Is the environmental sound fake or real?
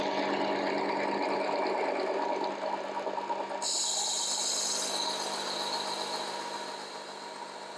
real